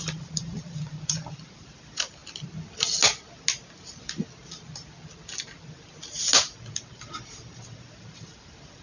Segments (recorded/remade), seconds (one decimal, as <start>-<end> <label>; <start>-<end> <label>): 0.0-2.2 remade; 2.2-6.7 recorded; 6.7-8.8 remade